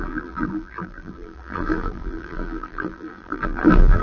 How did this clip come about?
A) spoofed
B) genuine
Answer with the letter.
A